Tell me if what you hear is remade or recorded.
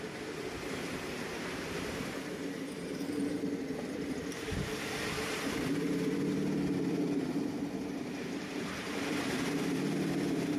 remade